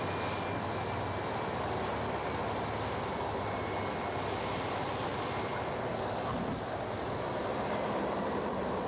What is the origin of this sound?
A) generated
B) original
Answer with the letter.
B